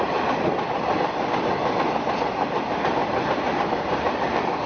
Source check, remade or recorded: recorded